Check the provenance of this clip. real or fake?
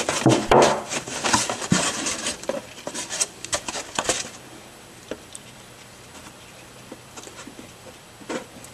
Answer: fake